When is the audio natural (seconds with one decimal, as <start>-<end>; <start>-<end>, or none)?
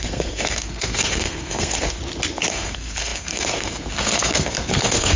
2.0-2.5